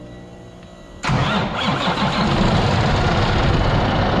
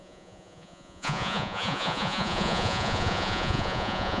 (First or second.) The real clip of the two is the first